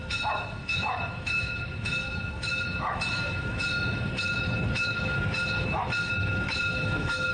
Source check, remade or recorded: remade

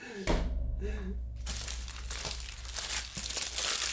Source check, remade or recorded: recorded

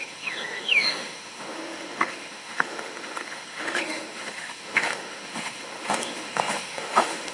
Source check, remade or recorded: remade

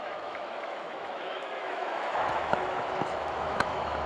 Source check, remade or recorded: remade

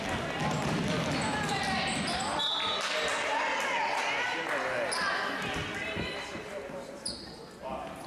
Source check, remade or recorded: recorded